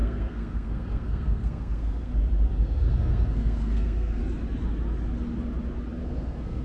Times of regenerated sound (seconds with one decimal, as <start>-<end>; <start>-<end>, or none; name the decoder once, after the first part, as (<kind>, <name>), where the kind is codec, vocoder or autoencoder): 0.0-2.1 (codec, SNAC); 2.6-4.2; 6.0-6.6